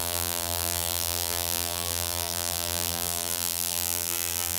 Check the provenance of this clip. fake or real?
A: fake